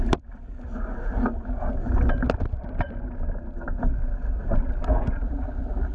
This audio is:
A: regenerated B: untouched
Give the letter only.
A